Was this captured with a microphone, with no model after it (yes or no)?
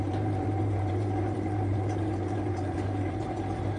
no